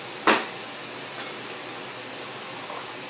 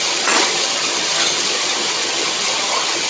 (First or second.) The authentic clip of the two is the first